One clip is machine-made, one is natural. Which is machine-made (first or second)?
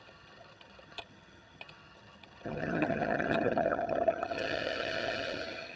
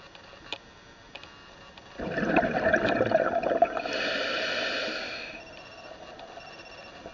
first